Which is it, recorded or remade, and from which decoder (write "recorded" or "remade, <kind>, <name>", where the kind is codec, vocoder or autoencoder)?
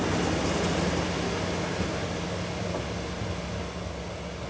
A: recorded